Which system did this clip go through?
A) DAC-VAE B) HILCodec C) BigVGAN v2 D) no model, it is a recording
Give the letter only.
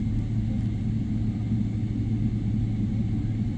D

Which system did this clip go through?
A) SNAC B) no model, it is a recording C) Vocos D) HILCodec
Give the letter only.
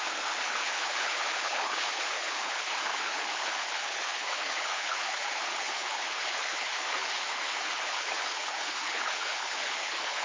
D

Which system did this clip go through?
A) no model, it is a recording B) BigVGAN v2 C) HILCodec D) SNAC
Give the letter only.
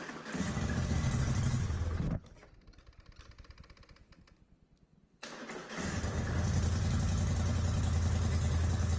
A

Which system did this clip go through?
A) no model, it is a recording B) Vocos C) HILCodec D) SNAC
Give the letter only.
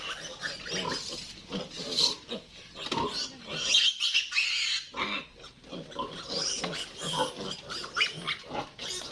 A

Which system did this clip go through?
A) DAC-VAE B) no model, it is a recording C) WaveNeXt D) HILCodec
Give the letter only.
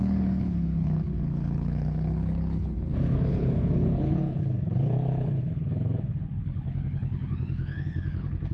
D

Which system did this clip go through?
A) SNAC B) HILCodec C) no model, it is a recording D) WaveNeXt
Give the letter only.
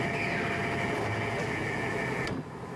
C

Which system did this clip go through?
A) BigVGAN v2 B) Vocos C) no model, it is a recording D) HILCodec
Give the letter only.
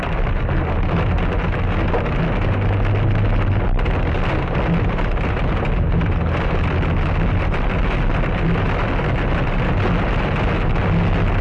C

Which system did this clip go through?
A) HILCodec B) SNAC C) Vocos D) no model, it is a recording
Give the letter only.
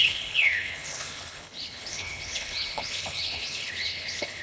A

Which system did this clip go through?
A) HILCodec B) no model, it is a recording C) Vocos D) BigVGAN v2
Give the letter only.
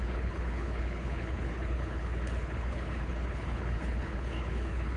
A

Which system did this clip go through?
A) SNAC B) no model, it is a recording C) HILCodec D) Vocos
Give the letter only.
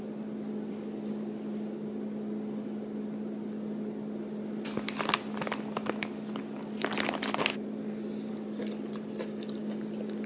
B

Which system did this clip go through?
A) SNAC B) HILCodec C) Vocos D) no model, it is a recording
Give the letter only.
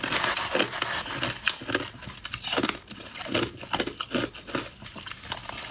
D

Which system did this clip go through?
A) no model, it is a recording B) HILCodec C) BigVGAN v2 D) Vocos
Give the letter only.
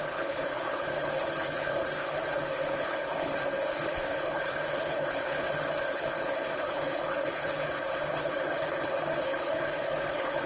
B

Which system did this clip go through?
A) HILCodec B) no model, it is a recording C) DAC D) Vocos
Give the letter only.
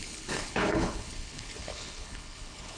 A